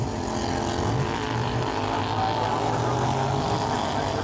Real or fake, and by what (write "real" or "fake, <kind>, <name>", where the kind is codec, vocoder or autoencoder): real